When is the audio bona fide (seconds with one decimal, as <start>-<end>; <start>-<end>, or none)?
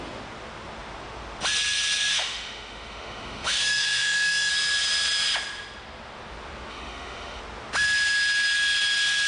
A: 0.0-2.1; 4.5-6.7; 7.4-9.3